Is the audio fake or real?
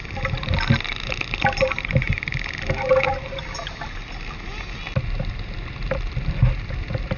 real